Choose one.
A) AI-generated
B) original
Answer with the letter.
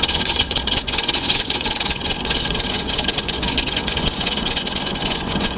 A